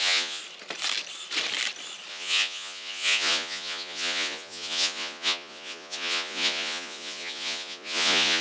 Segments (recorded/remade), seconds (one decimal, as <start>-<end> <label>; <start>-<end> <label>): 0.0-0.4 remade; 0.4-2.1 recorded; 2.1-8.4 remade